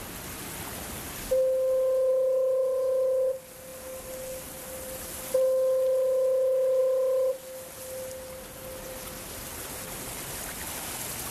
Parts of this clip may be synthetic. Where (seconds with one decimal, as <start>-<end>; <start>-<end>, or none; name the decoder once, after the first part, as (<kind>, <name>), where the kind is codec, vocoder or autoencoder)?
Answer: none